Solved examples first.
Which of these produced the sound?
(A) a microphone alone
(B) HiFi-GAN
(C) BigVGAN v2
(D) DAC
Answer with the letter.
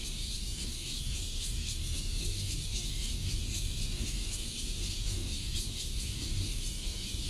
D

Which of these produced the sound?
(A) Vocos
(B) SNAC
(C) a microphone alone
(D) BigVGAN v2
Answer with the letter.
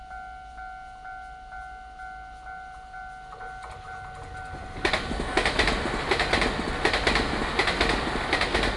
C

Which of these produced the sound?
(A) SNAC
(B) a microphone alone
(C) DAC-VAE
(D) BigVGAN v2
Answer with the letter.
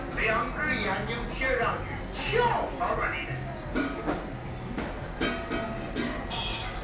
B